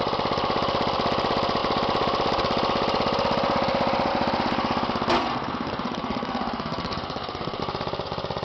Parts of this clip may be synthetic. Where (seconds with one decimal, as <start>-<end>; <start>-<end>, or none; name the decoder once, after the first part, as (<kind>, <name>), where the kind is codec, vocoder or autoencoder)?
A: 5.2-7.6 (codec, SNAC)